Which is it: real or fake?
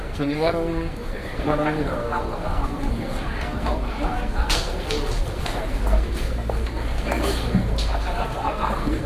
fake